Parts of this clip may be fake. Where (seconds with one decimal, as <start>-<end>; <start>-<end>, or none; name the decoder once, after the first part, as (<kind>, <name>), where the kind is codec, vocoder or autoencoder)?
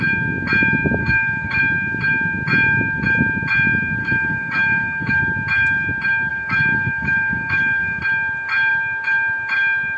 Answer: 1.0-1.6 (codec, DAC); 4.0-5.2; 6.3-8.0